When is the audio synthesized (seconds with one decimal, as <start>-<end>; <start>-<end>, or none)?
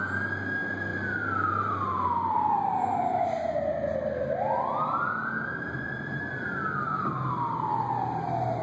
0.9-2.6